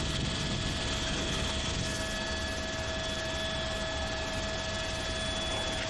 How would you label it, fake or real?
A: real